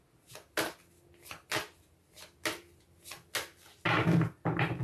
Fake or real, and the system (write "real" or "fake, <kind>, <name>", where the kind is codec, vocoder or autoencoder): real